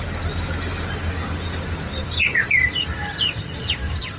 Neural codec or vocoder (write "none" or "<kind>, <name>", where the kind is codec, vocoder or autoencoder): none